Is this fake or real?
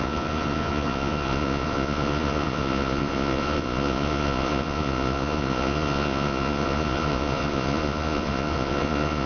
fake